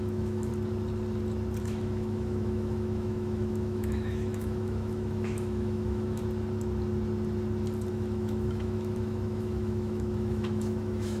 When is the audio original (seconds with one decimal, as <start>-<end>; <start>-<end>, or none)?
0.5-1.6; 6.2-7.9